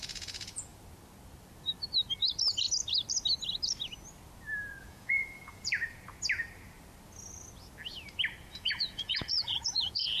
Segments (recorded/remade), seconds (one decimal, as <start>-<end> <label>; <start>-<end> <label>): 0.0-0.7 remade; 0.7-4.8 recorded; 4.8-5.7 remade; 5.7-8.5 recorded; 8.5-10.2 remade